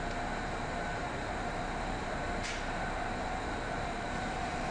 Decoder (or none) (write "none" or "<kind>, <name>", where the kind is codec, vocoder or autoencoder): vocoder, BigVGAN v2